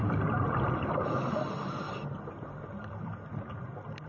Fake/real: real